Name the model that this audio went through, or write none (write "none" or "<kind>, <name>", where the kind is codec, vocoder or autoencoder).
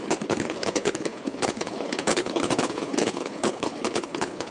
codec, HILCodec